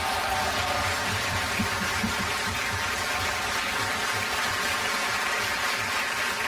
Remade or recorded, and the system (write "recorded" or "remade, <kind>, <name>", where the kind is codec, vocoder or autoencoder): recorded